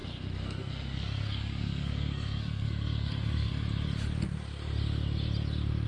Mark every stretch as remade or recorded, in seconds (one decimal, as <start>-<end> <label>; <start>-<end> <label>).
0.0-3.5 remade; 3.5-5.9 recorded